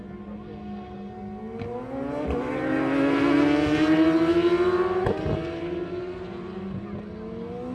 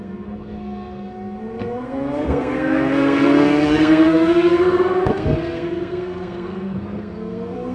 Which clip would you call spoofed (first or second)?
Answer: second